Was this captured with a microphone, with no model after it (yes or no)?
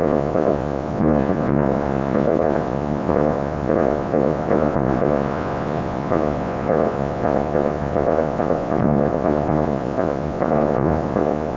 no